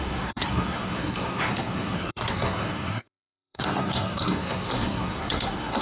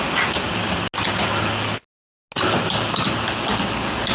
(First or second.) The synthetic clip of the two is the first